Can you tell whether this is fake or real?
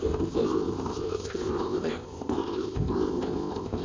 fake